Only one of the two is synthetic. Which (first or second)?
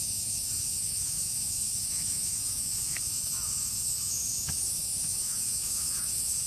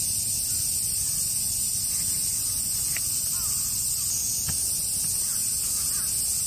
first